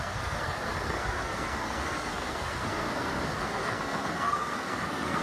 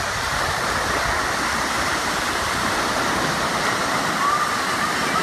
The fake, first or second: first